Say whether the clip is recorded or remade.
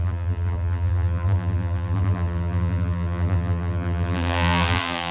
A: remade